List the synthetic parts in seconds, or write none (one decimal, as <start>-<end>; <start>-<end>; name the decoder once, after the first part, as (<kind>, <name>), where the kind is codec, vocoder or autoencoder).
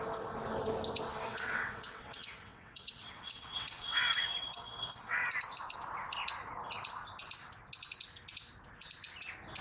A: 1.3-5.3 (vocoder, WaveNeXt)